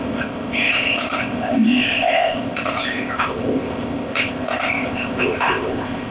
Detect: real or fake fake